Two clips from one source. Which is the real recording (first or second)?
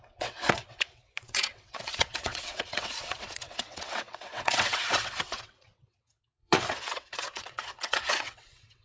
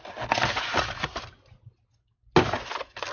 second